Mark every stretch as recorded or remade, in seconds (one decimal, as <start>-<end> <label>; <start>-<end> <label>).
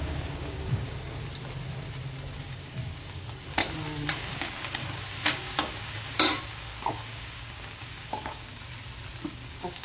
0.0-1.3 remade; 1.3-2.4 recorded; 2.4-3.6 remade; 3.6-4.1 recorded; 4.1-8.6 remade; 8.6-9.3 recorded; 9.3-9.8 remade